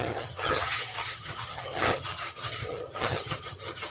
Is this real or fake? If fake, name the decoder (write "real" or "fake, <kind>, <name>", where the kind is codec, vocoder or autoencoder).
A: fake, vocoder, HiFi-GAN